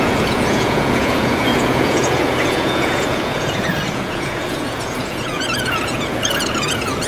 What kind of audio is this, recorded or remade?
remade